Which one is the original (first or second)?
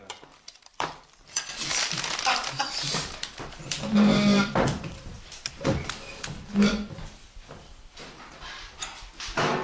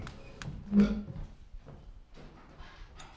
second